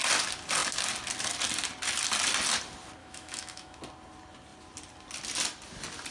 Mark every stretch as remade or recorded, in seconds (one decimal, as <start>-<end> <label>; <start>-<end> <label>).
0.0-3.0 recorded; 3.0-3.8 remade; 3.8-6.1 recorded